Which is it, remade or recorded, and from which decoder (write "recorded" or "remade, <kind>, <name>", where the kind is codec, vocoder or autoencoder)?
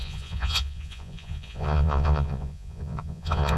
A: remade, vocoder, Vocos